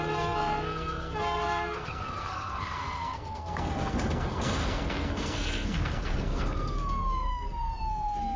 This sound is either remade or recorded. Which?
remade